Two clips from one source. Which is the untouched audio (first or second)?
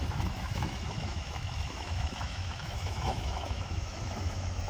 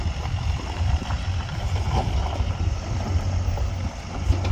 second